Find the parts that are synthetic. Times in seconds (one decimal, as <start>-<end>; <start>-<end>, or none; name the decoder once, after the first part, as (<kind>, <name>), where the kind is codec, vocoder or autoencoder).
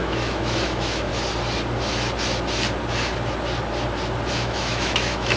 0.0-1.1 (autoencoder, DAC-VAE); 4.3-5.4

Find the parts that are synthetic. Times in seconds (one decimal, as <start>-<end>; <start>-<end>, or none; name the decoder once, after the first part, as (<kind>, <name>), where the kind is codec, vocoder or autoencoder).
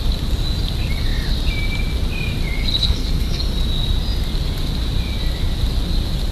2.8-3.4 (codec, SNAC)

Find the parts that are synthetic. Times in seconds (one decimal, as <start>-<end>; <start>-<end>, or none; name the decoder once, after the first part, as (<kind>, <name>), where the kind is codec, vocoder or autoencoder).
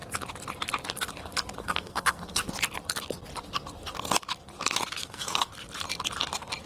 1.6-2.5 (codec, SNAC); 5.0-5.5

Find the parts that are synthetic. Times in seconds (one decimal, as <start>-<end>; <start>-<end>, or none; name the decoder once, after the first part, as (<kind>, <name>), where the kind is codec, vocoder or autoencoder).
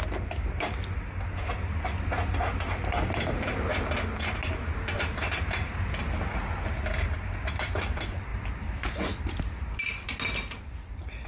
none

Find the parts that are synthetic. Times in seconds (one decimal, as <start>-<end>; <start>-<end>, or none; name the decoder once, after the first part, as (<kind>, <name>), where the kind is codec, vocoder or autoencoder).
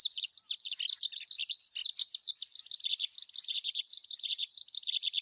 3.5-4.6 (vocoder, BigVGAN v2)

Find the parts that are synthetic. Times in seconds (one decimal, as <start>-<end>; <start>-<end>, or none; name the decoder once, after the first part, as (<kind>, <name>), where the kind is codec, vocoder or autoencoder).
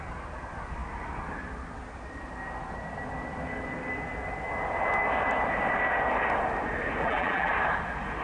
7.0-7.5 (vocoder, BigVGAN v2)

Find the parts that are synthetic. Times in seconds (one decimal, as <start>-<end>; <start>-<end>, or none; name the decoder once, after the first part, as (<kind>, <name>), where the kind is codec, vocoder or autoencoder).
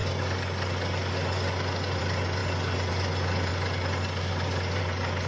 none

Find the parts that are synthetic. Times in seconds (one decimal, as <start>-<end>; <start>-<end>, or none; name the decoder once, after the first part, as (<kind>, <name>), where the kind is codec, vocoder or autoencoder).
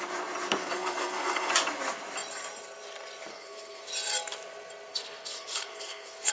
0.6-1.5 (codec, SNAC); 3.3-3.9; 4.9-6.3